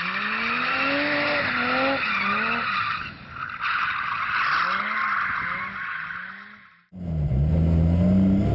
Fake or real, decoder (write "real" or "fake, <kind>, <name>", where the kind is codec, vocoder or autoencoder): real